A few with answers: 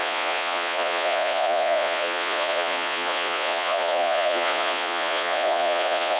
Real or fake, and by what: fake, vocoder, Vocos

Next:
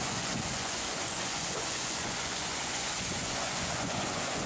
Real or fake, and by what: fake, vocoder, Vocos